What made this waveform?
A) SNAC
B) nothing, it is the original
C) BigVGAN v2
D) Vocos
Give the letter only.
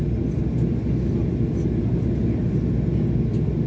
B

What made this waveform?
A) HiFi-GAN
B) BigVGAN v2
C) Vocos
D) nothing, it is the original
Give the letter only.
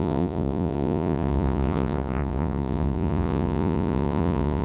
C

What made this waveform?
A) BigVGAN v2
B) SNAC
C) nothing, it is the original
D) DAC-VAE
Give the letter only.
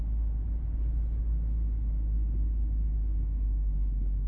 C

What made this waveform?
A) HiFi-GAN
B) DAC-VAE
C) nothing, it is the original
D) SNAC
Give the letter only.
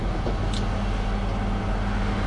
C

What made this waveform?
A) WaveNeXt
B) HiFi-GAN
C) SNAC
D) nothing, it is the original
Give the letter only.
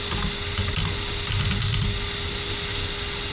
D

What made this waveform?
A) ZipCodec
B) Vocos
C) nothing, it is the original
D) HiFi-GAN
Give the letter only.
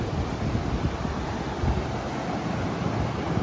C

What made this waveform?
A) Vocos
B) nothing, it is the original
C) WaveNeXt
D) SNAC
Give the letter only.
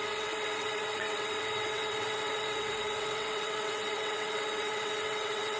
C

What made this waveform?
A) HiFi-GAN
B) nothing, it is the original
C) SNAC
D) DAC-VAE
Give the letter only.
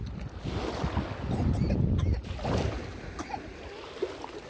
B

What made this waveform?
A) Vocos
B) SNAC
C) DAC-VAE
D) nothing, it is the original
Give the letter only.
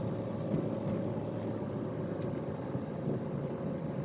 D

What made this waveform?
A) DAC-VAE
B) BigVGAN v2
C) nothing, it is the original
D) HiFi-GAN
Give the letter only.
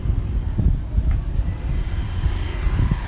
C